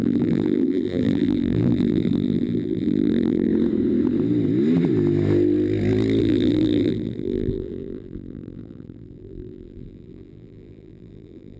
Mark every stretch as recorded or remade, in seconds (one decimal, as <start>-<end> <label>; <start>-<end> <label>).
0.0-3.5 remade; 3.5-6.2 recorded; 6.2-11.6 remade